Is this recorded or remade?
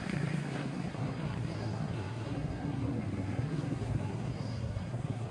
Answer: remade